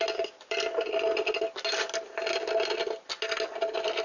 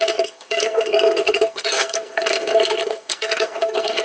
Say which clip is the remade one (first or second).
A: second